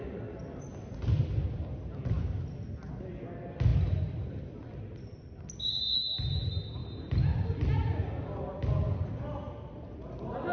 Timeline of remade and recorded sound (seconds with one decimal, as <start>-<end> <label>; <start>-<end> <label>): 0.0-10.5 recorded